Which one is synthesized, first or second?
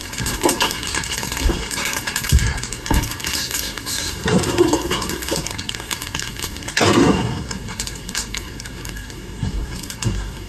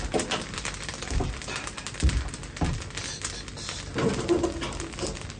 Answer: first